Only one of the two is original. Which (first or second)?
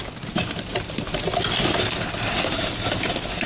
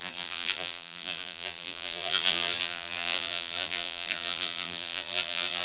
first